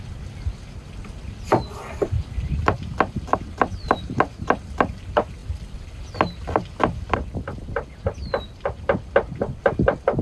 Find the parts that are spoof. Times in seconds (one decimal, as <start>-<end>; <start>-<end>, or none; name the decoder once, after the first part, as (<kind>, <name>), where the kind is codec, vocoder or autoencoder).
none